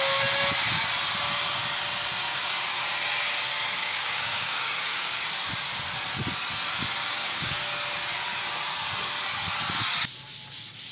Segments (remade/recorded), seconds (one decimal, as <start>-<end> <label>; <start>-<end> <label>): 0.0-2.2 recorded; 2.2-2.8 remade; 2.8-3.8 recorded; 3.8-5.3 remade; 5.3-7.0 recorded; 7.0-7.6 remade; 7.6-10.9 recorded